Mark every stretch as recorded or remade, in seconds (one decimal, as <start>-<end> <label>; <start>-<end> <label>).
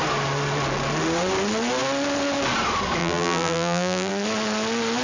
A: 0.0-3.0 recorded; 3.0-4.1 remade; 4.1-5.0 recorded